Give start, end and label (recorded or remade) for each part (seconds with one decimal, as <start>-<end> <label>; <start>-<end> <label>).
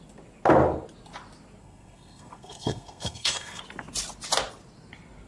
0.0-1.6 recorded; 1.6-3.6 remade; 3.6-5.3 recorded